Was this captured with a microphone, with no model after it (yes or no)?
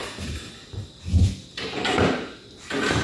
yes